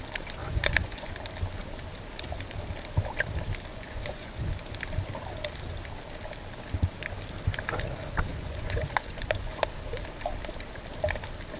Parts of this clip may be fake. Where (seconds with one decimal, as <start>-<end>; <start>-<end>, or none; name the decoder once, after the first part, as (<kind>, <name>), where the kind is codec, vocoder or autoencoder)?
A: 0.4-1.1 (vocoder, Vocos); 3.7-4.5; 8.3-9.6